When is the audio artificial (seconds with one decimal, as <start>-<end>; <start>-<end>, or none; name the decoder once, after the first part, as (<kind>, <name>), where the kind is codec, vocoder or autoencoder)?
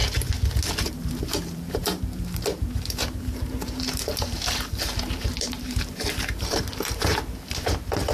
0.9-8.1 (vocoder, BigVGAN v2)